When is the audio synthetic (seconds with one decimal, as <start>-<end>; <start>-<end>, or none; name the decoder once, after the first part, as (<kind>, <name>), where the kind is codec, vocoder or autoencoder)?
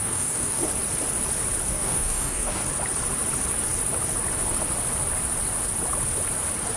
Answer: 0.0-0.6 (codec, DAC); 1.7-2.6